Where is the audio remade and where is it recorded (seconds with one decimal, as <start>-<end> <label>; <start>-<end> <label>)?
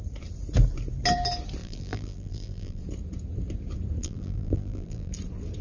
0.0-1.6 recorded; 1.6-2.8 remade; 2.8-4.0 recorded; 4.0-5.1 remade; 5.1-5.6 recorded